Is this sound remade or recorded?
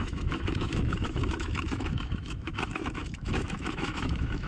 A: remade